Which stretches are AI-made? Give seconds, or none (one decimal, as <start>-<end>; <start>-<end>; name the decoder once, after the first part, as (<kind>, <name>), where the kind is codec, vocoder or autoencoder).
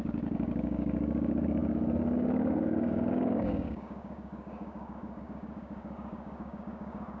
0.0-7.2 (codec, DAC)